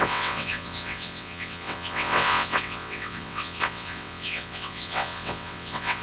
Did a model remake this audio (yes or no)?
yes